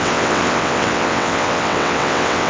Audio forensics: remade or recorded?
remade